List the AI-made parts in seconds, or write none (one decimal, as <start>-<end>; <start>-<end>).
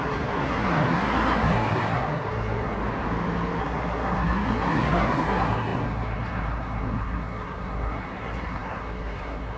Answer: 0.0-2.8; 3.6-9.6